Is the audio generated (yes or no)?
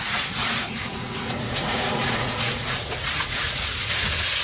yes